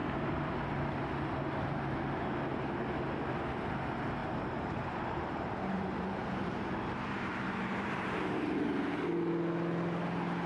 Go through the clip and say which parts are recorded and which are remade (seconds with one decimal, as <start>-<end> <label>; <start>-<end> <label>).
0.0-1.0 remade; 1.0-4.2 recorded; 4.2-9.3 remade; 9.3-10.5 recorded